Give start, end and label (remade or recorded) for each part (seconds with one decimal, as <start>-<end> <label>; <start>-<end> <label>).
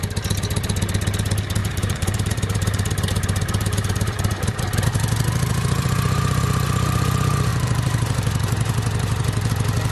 0.0-1.6 recorded; 1.6-4.6 remade; 4.6-5.5 recorded; 5.5-6.4 remade; 6.4-7.5 recorded; 7.5-9.5 remade; 9.5-9.9 recorded